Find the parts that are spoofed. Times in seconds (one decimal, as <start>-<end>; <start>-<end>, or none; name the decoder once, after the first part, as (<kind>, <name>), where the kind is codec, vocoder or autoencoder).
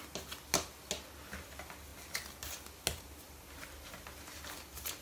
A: none